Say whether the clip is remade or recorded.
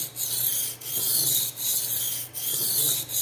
recorded